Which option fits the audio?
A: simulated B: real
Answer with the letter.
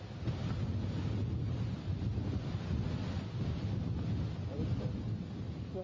B